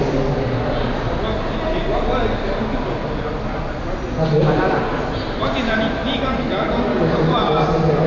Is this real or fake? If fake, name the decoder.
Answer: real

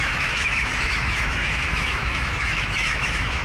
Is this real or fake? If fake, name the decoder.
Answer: fake, autoencoder, DAC-VAE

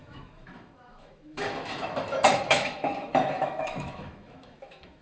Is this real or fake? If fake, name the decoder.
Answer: fake, autoencoder, DAC-VAE